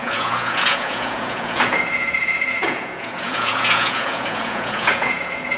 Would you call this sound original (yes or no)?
no